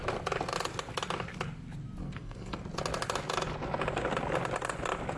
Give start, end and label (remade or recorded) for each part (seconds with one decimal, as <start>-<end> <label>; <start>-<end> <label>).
0.0-2.0 recorded; 2.0-2.6 remade; 2.6-5.2 recorded